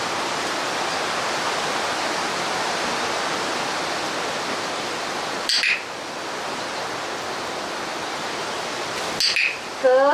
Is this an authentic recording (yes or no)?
yes